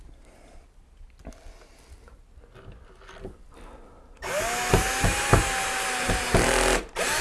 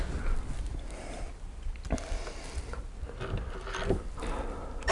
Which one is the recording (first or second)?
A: first